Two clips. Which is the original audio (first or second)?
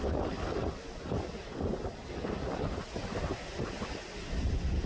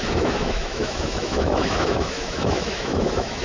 first